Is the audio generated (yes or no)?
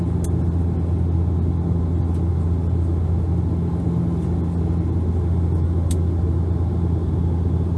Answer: no